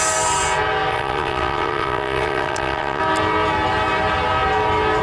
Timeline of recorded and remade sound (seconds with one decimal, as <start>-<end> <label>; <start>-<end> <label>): 0.0-0.9 recorded; 0.9-3.0 remade; 3.0-5.0 recorded